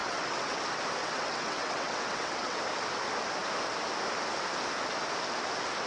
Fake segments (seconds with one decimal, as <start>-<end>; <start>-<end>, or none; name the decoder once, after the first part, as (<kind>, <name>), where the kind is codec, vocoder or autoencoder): 0.0-0.6 (vocoder, WaveNeXt); 1.0-2.6